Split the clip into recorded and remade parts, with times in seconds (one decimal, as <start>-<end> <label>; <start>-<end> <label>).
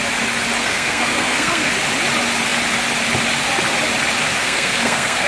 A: 0.0-0.6 recorded; 0.6-1.7 remade; 1.7-4.4 recorded; 4.4-5.3 remade